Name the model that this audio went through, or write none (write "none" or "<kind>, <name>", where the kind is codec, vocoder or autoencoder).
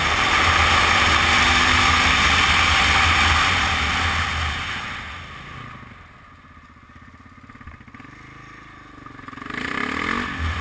none